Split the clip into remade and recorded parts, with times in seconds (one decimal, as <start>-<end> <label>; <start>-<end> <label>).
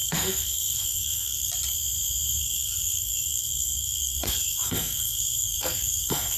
0.0-1.5 remade; 1.5-2.4 recorded; 2.4-6.4 remade